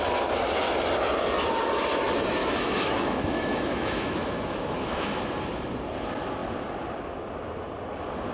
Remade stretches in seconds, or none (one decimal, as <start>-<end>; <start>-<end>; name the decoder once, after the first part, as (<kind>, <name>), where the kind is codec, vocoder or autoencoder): 2.4-5.2 (autoencoder, DAC-VAE)